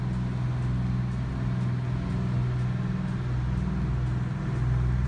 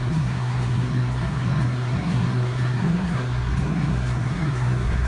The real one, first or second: first